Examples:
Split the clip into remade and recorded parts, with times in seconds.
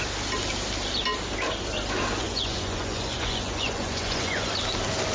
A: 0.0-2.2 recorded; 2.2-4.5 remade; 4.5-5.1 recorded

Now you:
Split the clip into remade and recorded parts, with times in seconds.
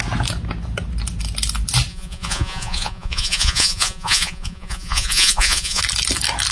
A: 0.0-1.9 recorded; 1.9-5.8 remade; 5.8-6.5 recorded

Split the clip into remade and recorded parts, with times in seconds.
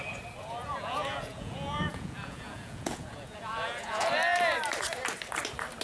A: 0.0-0.6 recorded; 0.6-4.1 remade; 4.1-5.8 recorded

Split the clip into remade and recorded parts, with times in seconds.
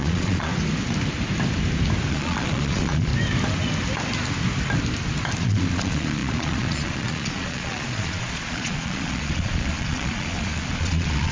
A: 0.0-0.5 remade; 0.5-2.1 recorded; 2.1-3.1 remade; 3.1-5.4 recorded; 5.4-11.3 remade